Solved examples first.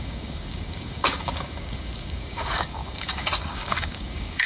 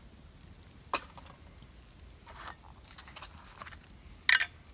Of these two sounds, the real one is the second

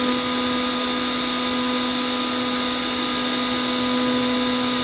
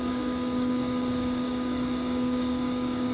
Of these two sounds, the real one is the first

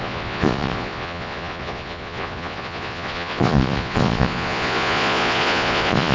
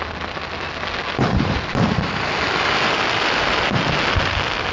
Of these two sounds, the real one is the second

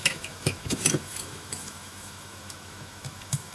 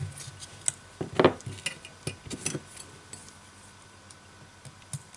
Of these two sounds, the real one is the second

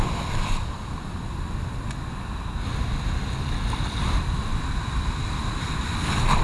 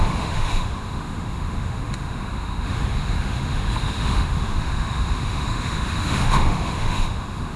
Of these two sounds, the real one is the first